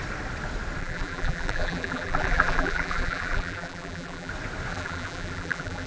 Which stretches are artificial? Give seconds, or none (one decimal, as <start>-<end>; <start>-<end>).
0.8-4.3; 4.7-5.9